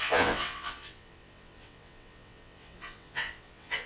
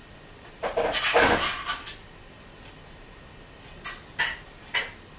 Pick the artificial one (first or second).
first